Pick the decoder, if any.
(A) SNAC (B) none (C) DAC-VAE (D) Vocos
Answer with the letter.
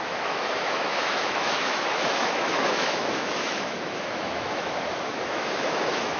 C